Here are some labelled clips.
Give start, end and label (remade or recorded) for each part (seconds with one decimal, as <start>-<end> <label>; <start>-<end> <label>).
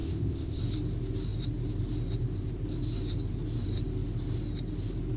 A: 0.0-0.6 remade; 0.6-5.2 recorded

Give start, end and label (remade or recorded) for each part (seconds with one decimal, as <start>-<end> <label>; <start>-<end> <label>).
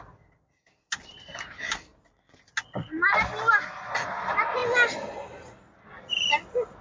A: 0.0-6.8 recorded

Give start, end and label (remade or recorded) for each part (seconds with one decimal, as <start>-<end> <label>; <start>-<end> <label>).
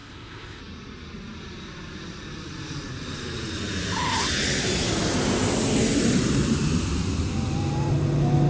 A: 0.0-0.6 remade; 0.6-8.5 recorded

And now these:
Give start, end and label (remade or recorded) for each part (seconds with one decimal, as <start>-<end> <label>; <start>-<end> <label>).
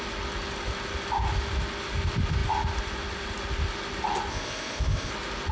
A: 0.0-4.3 recorded; 4.3-5.1 remade; 5.1-5.5 recorded